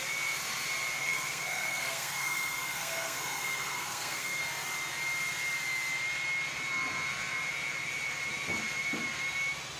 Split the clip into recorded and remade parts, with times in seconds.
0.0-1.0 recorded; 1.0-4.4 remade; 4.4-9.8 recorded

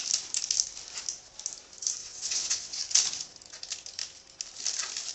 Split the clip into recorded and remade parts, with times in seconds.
0.0-2.0 recorded; 2.0-2.8 remade; 2.8-5.1 recorded